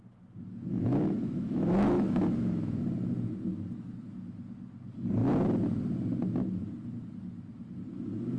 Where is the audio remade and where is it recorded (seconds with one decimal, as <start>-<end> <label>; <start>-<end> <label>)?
0.0-0.7 recorded; 0.7-2.8 remade; 2.8-8.4 recorded